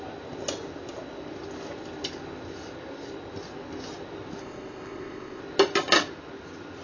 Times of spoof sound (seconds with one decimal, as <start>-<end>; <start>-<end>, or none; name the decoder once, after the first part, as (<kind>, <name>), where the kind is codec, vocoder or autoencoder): 4.4-5.4 (codec, ZipCodec)